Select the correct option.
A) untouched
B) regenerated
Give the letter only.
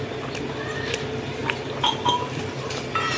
A